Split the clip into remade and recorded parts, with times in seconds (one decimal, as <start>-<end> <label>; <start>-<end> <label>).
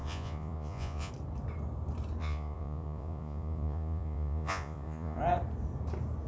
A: 0.0-1.1 remade; 1.1-2.2 recorded; 2.2-5.2 remade; 5.2-6.3 recorded